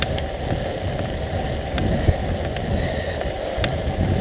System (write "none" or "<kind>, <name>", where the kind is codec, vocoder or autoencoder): none